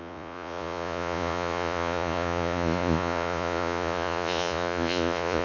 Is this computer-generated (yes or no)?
yes